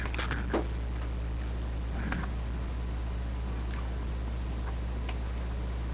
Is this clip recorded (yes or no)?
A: yes